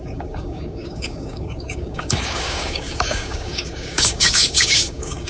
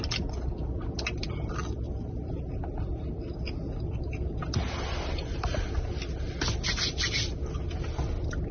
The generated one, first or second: first